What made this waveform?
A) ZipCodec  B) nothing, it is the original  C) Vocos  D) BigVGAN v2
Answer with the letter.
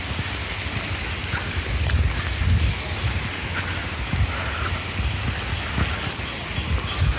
B